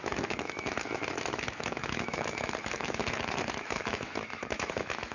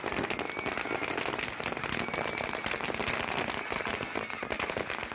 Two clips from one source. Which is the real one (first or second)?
second